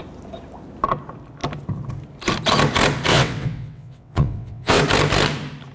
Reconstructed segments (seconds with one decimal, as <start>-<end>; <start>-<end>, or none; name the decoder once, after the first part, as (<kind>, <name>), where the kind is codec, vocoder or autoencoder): 3.1-4.8 (vocoder, WaveNeXt)